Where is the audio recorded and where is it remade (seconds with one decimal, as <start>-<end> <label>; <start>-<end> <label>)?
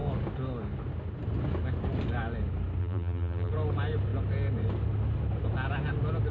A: 0.0-2.8 recorded; 2.8-3.5 remade; 3.5-6.3 recorded